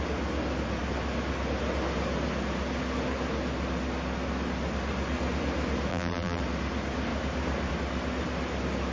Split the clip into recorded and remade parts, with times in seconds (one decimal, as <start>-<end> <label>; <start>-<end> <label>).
0.0-5.9 recorded; 5.9-6.4 remade; 6.4-8.9 recorded